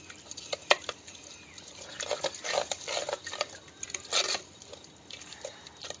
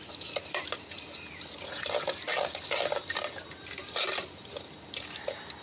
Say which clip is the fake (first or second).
first